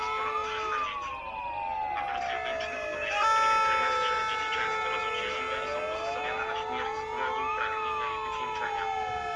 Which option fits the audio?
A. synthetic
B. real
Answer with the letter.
B